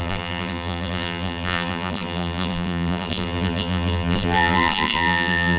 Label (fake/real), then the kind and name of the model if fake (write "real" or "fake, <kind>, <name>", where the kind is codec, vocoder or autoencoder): fake, vocoder, BigVGAN v2